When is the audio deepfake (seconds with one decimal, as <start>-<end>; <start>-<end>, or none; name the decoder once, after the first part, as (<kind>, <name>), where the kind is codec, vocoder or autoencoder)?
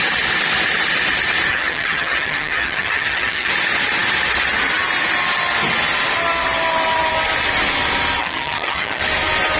1.5-3.5 (vocoder, HiFi-GAN); 8.2-9.0